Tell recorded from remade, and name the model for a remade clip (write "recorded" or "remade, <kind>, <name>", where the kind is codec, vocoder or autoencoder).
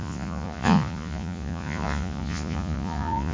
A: remade, vocoder, Vocos